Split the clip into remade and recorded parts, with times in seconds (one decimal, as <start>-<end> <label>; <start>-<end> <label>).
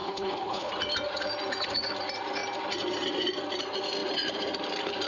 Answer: 0.0-0.7 remade; 0.7-5.1 recorded